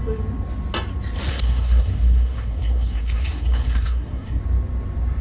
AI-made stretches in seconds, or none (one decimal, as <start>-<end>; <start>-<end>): 1.3-4.4